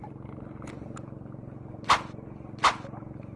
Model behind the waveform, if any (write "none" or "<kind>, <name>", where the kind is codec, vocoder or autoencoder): none